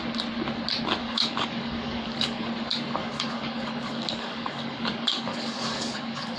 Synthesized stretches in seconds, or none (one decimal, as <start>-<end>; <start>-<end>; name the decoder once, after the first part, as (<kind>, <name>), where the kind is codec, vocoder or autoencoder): 1.0-2.5 (codec, DAC); 3.0-6.4